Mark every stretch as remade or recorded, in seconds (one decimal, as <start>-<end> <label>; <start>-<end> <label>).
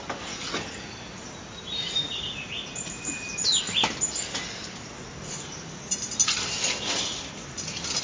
0.0-8.0 recorded